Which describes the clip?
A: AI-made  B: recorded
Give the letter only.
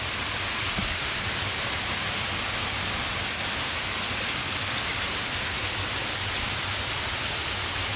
B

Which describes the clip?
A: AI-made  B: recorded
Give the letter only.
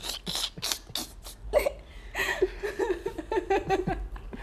B